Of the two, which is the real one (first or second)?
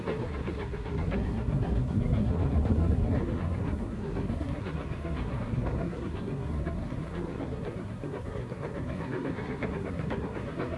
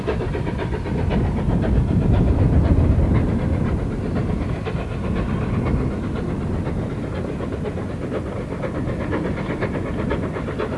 second